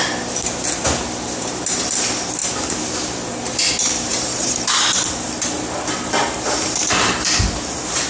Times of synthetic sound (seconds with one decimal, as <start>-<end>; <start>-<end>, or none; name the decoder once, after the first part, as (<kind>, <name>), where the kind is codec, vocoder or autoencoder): 4.1-8.1 (vocoder, BigVGAN v2)